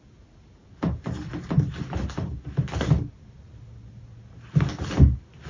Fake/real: real